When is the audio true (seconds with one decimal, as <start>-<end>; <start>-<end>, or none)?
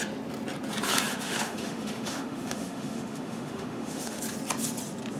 0.0-1.1; 4.2-5.2